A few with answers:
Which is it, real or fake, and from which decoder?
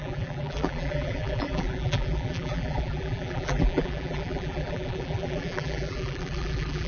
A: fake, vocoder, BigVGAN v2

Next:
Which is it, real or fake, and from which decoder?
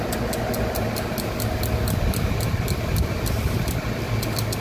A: real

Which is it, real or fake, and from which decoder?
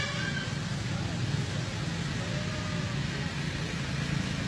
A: real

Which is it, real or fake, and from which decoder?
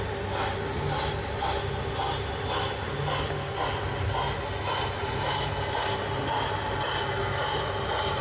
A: real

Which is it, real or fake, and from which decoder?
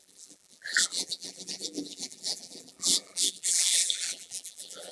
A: fake, vocoder, BigVGAN v2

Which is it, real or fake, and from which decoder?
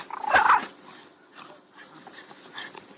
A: real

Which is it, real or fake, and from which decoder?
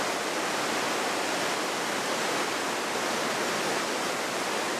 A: real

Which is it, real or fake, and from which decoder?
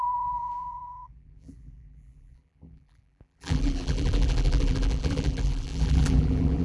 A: fake, vocoder, BigVGAN v2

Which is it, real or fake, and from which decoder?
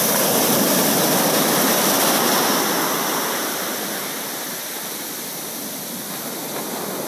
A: real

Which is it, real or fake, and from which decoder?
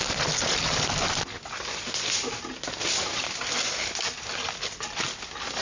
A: real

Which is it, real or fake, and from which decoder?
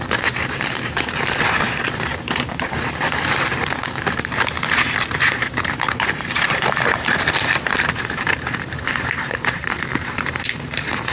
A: fake, vocoder, BigVGAN v2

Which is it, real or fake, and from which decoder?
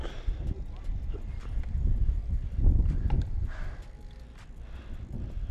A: real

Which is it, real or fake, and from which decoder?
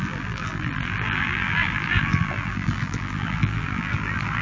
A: fake, vocoder, BigVGAN v2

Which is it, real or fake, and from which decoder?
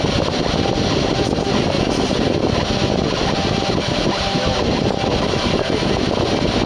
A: real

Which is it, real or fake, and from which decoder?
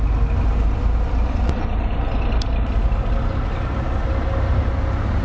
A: real